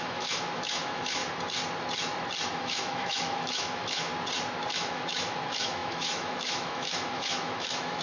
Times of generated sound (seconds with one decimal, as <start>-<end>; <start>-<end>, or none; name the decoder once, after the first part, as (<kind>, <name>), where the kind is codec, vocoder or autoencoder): 0.0-1.2 (autoencoder, DAC-VAE); 2.5-4.1; 4.7-8.0